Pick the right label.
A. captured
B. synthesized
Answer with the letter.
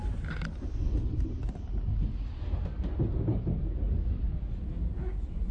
A